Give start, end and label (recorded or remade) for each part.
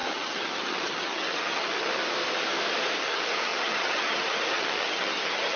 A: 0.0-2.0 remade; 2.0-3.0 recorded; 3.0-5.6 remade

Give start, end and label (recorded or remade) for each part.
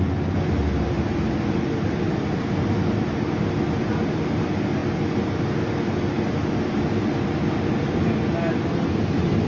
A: 0.0-9.5 recorded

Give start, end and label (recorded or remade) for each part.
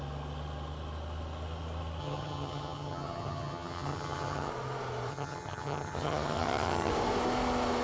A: 0.0-2.0 recorded; 2.0-4.5 remade; 4.5-5.1 recorded; 5.1-6.9 remade; 6.9-7.8 recorded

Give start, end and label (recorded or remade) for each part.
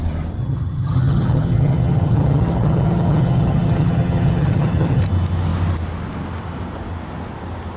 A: 0.0-0.4 recorded; 0.4-5.0 remade; 5.0-7.8 recorded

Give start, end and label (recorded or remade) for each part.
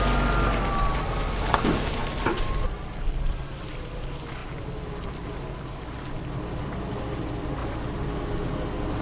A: 0.0-9.0 recorded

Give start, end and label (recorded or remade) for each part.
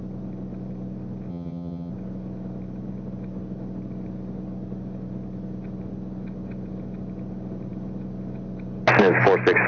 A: 0.0-1.3 recorded; 1.3-1.9 remade; 1.9-9.7 recorded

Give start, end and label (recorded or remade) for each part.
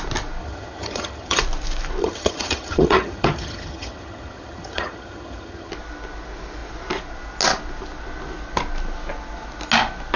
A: 0.0-0.4 recorded; 0.4-1.4 remade; 1.4-2.0 recorded; 2.0-5.7 remade; 5.7-10.2 recorded